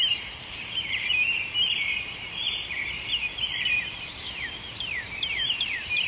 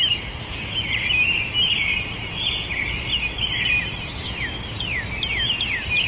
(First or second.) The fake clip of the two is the first